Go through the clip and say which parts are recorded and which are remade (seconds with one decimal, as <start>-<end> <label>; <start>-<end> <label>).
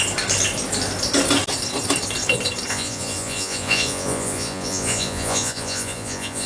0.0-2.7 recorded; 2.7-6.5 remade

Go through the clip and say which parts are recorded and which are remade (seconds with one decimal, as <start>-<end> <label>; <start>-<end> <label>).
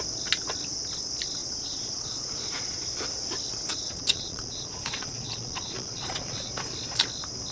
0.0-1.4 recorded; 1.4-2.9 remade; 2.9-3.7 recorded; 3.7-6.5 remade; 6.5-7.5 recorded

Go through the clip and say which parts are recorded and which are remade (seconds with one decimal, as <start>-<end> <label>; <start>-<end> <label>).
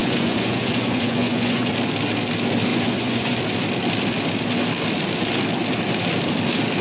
0.0-1.7 remade; 1.7-2.7 recorded; 2.7-3.4 remade; 3.4-6.8 recorded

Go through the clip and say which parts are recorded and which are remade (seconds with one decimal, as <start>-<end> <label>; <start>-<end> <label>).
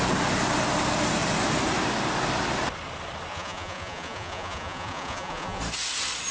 0.0-3.3 recorded; 3.3-5.6 remade; 5.6-6.3 recorded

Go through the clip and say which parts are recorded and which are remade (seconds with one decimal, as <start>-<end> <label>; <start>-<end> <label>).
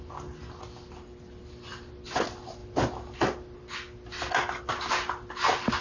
0.0-5.8 recorded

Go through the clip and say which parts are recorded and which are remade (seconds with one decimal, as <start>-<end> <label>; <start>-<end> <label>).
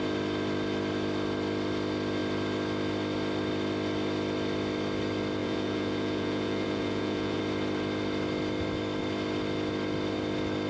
0.0-5.4 recorded; 5.4-7.4 remade; 7.4-10.7 recorded